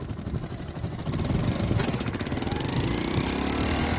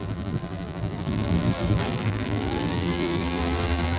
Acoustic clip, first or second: first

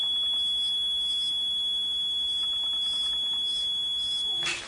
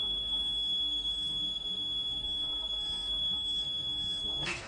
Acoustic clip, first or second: first